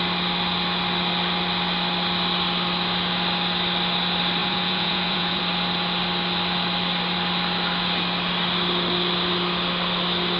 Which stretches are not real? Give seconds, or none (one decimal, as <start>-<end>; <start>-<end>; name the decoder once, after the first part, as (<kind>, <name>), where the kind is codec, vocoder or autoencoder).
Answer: 4.4-5.4 (vocoder, Vocos)